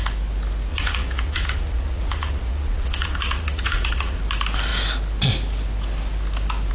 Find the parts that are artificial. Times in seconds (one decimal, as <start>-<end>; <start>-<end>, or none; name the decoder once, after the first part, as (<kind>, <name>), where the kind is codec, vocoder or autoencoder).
0.7-4.2 (vocoder, Vocos)